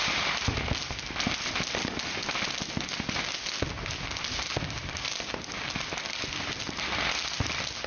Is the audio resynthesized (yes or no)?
no